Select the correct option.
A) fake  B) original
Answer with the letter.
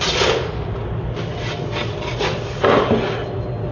B